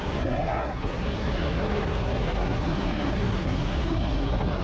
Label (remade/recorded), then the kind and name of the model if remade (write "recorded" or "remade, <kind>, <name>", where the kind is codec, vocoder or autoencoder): remade, codec, SNAC